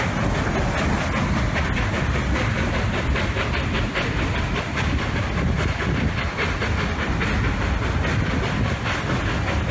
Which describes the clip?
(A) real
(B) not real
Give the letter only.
A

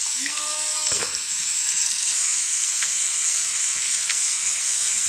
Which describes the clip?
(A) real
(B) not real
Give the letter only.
B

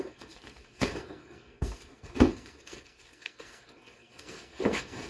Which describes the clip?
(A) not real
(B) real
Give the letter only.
A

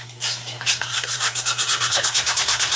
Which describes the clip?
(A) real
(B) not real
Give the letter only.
B